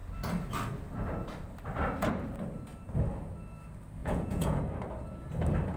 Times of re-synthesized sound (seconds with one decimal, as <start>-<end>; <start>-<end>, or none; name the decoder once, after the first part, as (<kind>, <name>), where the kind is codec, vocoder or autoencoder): 4.0-4.6 (vocoder, Vocos)